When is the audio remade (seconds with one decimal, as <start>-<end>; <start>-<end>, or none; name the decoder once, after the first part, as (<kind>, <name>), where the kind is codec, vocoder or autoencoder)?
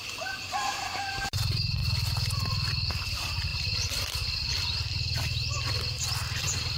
0.0-1.8 (vocoder, BigVGAN v2); 2.9-3.5; 4.5-6.8